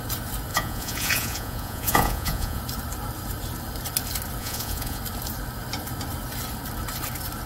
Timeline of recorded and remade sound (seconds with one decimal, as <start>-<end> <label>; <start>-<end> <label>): 0.0-0.5 recorded; 0.5-2.6 remade; 2.6-4.4 recorded; 4.4-5.0 remade; 5.0-7.5 recorded